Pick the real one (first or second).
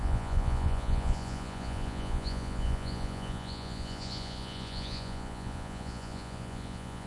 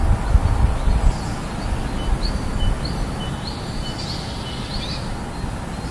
second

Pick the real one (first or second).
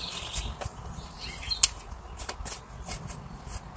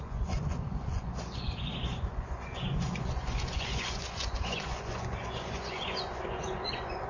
first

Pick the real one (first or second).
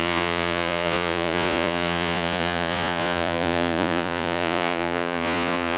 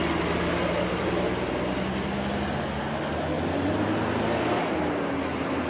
second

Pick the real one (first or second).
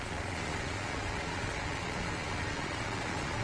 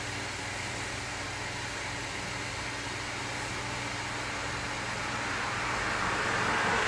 second